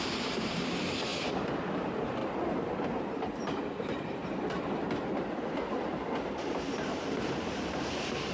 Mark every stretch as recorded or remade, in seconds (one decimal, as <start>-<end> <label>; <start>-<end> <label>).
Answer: 0.0-1.1 remade; 1.1-1.7 recorded; 1.7-4.2 remade; 4.2-8.3 recorded